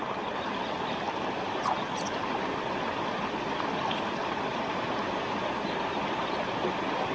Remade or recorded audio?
recorded